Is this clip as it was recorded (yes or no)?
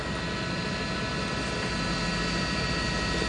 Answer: yes